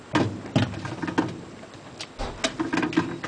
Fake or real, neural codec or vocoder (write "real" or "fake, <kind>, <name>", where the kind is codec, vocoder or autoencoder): real